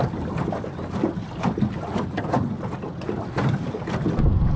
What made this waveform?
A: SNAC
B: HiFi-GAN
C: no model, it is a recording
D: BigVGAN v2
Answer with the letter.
C